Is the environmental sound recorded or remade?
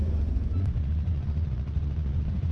remade